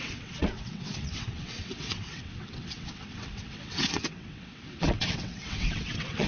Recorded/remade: remade